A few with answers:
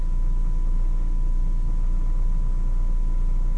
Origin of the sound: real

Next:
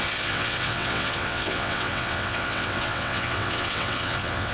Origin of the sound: fake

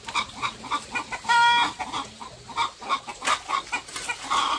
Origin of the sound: real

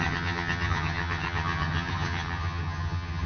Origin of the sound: fake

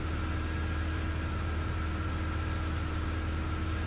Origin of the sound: real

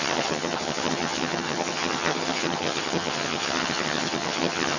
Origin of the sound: fake